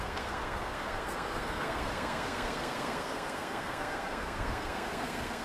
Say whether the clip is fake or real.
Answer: fake